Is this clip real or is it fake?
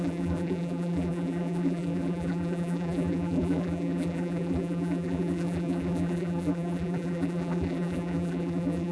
fake